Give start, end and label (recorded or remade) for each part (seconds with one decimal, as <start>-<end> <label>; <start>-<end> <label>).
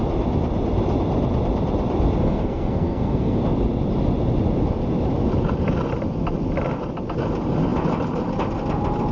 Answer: 0.0-2.2 recorded; 2.2-3.4 remade; 3.4-9.1 recorded